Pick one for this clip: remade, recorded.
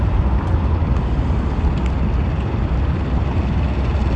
recorded